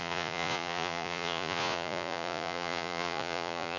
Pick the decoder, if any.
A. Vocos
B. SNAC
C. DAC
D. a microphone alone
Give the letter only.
A